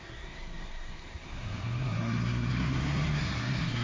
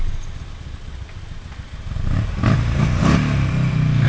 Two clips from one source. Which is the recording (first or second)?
second